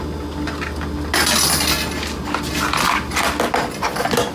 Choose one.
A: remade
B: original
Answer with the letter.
B